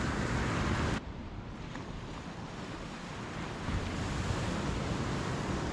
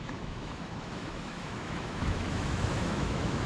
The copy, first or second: second